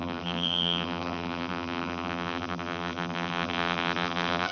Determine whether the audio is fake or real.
fake